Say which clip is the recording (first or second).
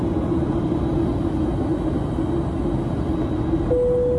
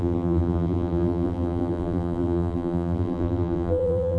first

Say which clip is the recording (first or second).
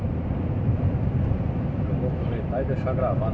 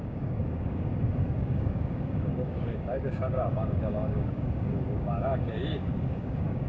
first